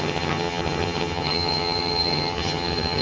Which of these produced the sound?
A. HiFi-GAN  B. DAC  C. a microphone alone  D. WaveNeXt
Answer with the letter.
A